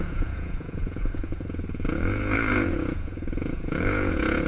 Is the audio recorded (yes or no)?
no